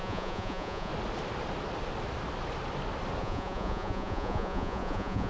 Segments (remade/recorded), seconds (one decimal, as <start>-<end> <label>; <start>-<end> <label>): 0.0-0.9 remade; 0.9-3.2 recorded; 3.2-5.3 remade